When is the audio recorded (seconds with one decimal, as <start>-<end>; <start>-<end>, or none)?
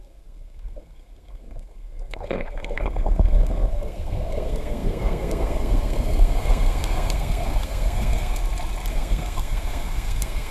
8.4-8.9